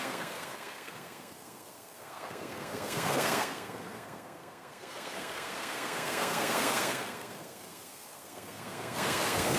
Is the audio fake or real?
fake